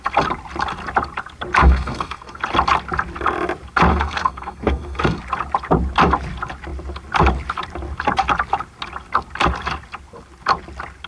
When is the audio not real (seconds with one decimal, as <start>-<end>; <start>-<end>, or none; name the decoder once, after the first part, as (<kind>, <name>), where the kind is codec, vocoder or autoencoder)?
1.6-2.4 (codec, SNAC); 3.9-5.2